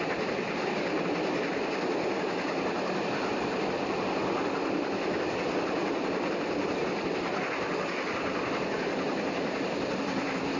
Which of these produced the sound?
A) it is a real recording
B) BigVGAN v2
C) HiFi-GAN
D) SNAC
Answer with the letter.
A